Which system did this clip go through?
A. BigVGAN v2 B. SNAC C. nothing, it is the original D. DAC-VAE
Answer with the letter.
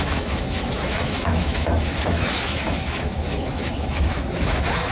D